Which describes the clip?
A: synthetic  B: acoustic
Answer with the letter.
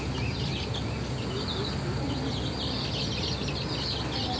B